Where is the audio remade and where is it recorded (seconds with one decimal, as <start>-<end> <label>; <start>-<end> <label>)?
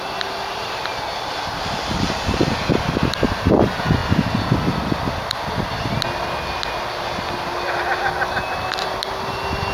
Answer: 0.0-0.9 remade; 0.9-1.9 recorded; 1.9-4.0 remade; 4.0-7.8 recorded; 7.8-9.7 remade